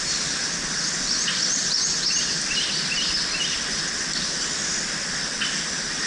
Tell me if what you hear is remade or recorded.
recorded